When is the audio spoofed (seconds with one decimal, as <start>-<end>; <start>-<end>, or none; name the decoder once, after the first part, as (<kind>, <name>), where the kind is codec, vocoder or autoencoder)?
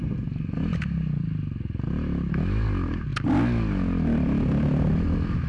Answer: none